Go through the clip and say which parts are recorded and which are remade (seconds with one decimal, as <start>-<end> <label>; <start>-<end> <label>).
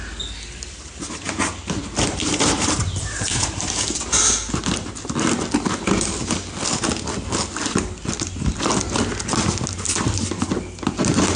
0.0-1.8 recorded; 1.8-4.0 remade; 4.0-11.4 recorded